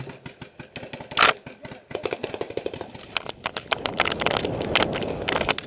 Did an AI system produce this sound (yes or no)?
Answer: no